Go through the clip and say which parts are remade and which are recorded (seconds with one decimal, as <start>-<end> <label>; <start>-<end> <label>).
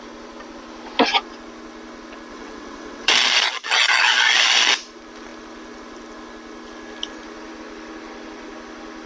0.0-2.3 recorded; 2.3-3.1 remade; 3.1-9.1 recorded